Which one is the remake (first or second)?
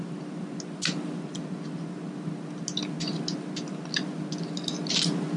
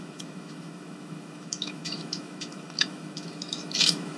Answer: second